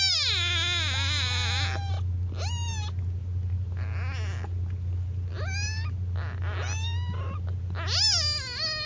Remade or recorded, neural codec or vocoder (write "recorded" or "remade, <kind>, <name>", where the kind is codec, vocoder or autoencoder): recorded